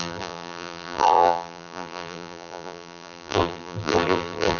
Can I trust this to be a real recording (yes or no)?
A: no